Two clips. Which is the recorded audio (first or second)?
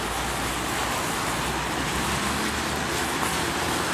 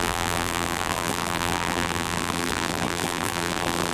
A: first